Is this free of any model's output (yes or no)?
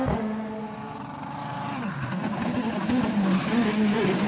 yes